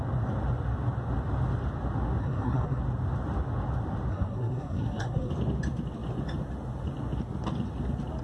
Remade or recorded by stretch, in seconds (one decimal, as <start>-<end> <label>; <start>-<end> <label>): 0.0-2.2 recorded; 2.2-2.8 remade; 2.8-4.1 recorded; 4.1-5.3 remade; 5.3-8.2 recorded